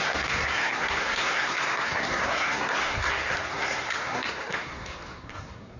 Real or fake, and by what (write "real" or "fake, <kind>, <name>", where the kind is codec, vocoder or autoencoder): fake, codec, SNAC